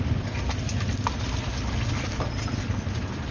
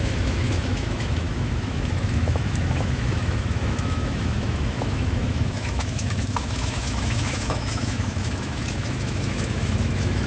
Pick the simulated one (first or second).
second